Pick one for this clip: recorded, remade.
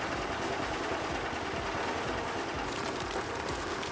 recorded